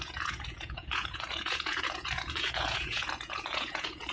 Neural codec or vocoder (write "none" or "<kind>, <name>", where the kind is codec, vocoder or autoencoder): vocoder, Vocos